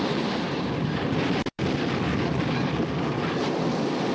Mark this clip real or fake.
real